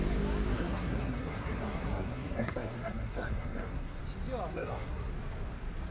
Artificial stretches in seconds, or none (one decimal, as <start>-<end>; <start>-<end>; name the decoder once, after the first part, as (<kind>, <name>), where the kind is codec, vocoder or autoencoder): 0.5-4.0 (codec, SNAC); 4.5-5.1